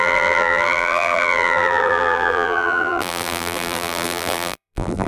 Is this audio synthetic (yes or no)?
yes